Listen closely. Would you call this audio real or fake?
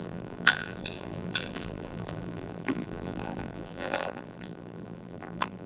fake